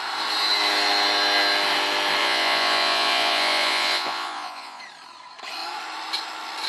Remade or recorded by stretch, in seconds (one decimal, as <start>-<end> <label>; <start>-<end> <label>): 0.0-2.2 recorded; 2.2-4.8 remade; 4.8-6.7 recorded

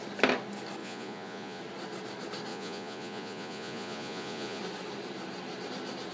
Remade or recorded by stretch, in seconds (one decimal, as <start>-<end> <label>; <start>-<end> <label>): 0.0-0.8 recorded; 0.8-1.6 remade; 1.6-2.5 recorded; 2.5-4.6 remade; 4.6-6.1 recorded

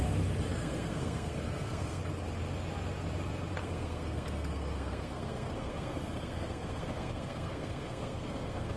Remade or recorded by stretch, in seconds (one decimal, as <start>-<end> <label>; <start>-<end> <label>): 0.0-0.5 recorded; 0.5-2.0 remade; 2.0-3.6 recorded; 3.6-8.8 remade

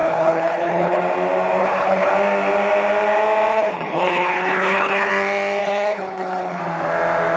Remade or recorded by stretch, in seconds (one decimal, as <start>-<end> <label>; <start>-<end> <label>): 0.0-1.0 remade; 1.0-1.6 recorded; 1.6-2.1 remade; 2.1-3.5 recorded; 3.5-5.1 remade; 5.1-5.6 recorded; 5.6-6.6 remade; 6.6-7.4 recorded

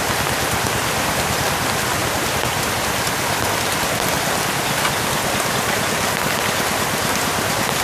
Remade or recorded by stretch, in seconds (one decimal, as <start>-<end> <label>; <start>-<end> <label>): 0.0-7.8 recorded

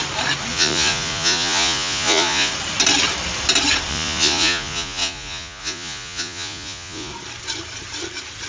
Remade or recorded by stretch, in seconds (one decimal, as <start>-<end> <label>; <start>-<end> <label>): 0.0-0.5 recorded; 0.5-2.5 remade; 2.5-3.9 recorded; 3.9-7.1 remade; 7.1-8.5 recorded

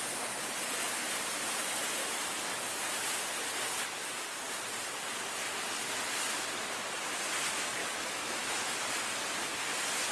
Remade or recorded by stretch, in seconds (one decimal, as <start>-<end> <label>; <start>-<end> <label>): 0.0-2.0 recorded; 2.0-2.6 remade; 2.6-7.8 recorded; 7.8-8.7 remade; 8.7-10.1 recorded